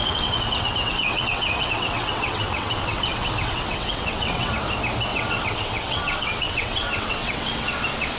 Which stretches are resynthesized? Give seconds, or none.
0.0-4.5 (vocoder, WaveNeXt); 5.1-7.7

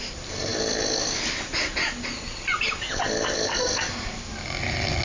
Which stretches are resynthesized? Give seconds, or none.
none

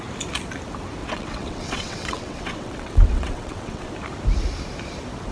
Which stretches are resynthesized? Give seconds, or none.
1.0-3.9 (vocoder, WaveNeXt)

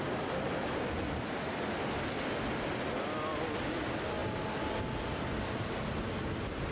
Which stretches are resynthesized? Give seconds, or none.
none